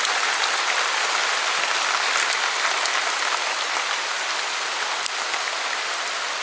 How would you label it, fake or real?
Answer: real